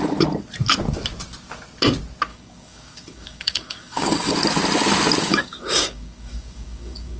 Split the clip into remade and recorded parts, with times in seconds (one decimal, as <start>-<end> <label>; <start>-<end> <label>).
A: 0.0-2.3 recorded; 2.3-4.3 remade; 4.3-5.2 recorded; 5.2-7.2 remade